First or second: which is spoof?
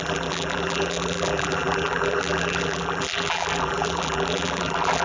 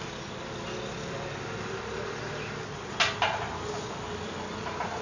first